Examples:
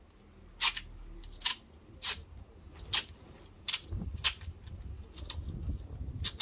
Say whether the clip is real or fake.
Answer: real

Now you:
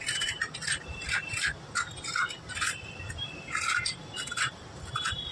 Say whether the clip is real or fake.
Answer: real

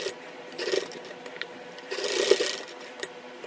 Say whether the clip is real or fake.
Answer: fake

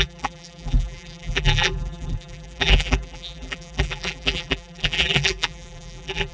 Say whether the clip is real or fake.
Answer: fake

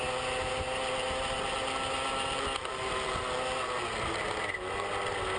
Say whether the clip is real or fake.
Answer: real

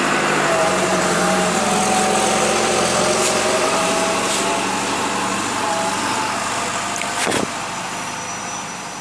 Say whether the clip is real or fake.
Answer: fake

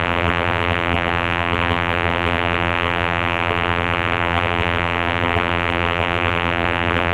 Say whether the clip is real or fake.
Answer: fake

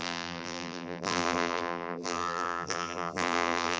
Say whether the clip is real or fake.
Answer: fake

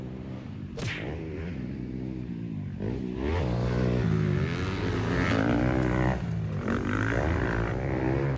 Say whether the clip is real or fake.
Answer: real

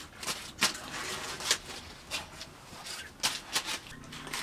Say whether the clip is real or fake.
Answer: real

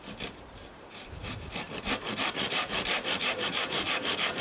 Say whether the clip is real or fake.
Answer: fake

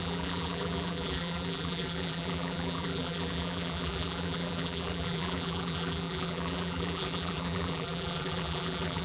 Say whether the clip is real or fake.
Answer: fake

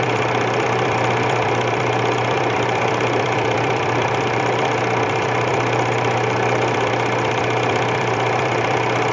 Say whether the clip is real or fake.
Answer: fake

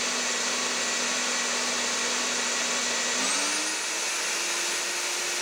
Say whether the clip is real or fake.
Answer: real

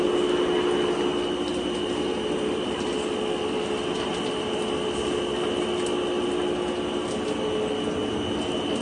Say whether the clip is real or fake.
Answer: real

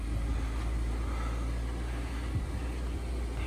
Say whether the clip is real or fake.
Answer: real